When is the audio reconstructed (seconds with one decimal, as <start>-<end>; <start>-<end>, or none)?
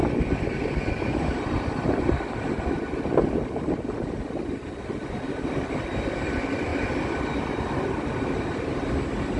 none